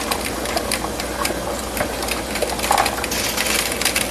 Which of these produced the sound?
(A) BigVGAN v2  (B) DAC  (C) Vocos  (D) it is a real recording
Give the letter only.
D